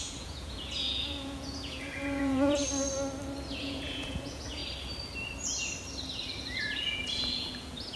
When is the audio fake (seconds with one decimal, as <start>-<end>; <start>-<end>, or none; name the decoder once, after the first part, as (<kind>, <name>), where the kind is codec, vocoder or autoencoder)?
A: 0.0-2.6 (vocoder, Vocos); 3.6-4.6; 6.4-8.0